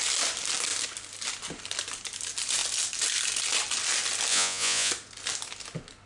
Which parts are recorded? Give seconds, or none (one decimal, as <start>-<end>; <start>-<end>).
0.0-4.3; 4.9-6.1